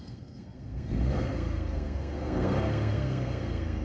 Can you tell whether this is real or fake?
fake